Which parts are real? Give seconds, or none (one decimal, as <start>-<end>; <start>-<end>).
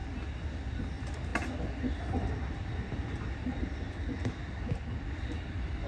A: 0.0-5.9